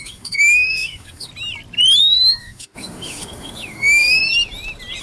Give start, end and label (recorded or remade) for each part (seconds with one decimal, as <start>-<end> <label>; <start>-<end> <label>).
0.0-1.3 remade; 1.3-2.0 recorded; 2.0-4.2 remade; 4.2-5.0 recorded